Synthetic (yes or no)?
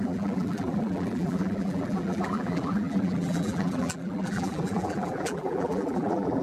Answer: yes